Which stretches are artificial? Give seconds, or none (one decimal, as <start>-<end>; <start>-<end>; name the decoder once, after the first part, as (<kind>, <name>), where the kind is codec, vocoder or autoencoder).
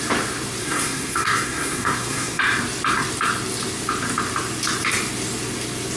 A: 0.6-2.4 (codec, SNAC)